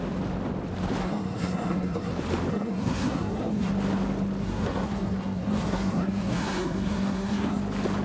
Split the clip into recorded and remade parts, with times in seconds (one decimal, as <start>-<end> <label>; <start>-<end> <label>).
0.0-1.0 recorded; 1.0-2.1 remade; 2.1-2.5 recorded; 2.5-3.7 remade; 3.7-4.4 recorded; 4.4-7.6 remade; 7.6-8.0 recorded